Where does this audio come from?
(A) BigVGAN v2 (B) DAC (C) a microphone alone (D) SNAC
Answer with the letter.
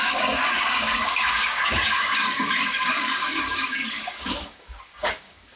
B